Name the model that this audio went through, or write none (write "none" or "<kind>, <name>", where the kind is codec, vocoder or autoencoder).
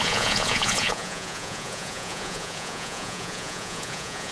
vocoder, Vocos